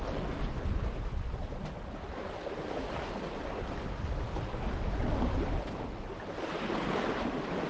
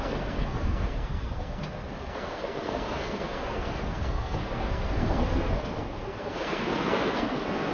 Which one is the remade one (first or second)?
second